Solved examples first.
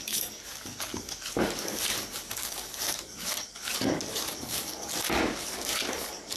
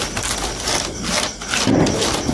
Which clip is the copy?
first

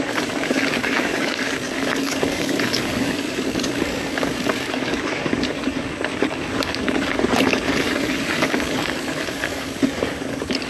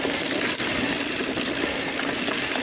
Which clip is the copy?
first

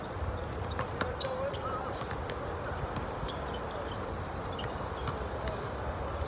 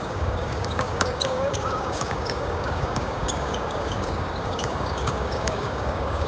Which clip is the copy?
second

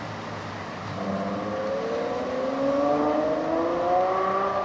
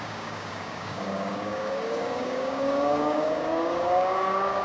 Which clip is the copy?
second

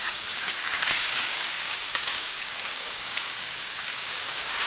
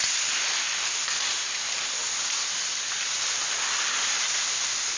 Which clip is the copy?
first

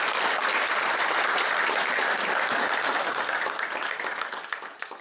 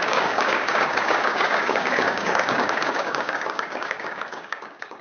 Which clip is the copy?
second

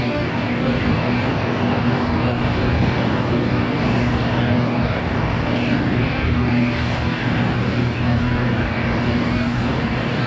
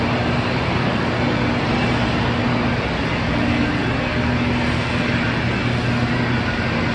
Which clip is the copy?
first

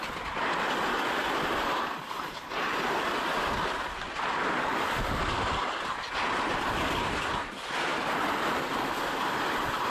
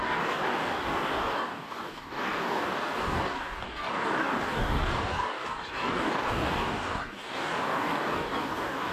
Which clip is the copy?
second